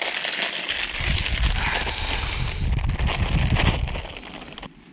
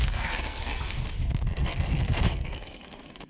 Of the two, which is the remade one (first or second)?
second